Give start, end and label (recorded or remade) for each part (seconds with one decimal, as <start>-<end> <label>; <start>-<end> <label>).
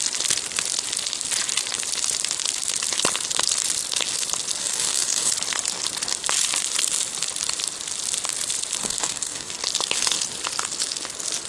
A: 0.0-4.6 recorded; 4.6-5.3 remade; 5.3-8.8 recorded; 8.8-9.5 remade; 9.5-11.5 recorded